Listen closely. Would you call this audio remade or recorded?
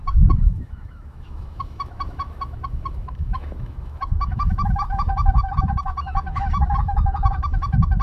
remade